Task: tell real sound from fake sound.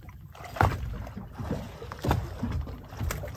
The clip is real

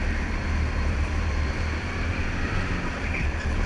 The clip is fake